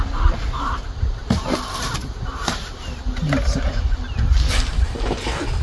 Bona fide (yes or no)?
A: yes